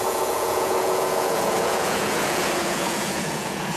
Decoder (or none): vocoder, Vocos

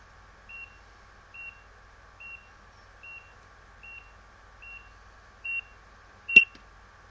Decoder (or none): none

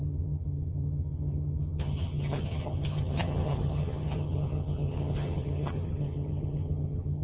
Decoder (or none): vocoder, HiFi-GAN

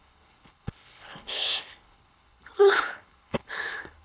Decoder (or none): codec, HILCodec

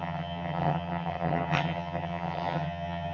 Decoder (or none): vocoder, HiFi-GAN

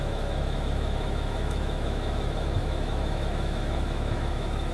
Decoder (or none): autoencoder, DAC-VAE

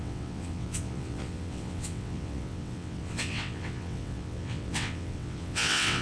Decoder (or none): vocoder, WaveNeXt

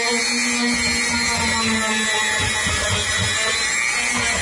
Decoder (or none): none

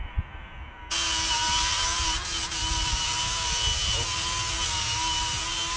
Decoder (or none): none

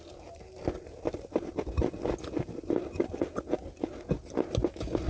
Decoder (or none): none